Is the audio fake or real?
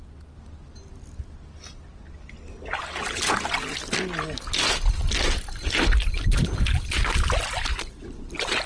real